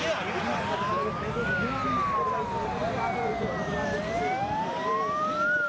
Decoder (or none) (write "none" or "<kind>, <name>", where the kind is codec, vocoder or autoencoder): none